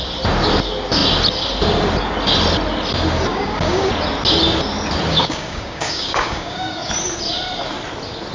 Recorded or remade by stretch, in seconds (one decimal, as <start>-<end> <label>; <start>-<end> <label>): 0.0-3.3 recorded; 3.3-3.9 remade; 3.9-5.1 recorded; 5.1-6.9 remade; 6.9-8.3 recorded